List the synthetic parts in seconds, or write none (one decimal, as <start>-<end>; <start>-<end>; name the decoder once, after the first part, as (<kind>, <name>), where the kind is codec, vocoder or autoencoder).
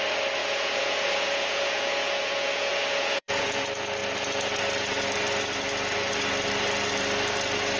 0.4-3.6 (vocoder, Vocos)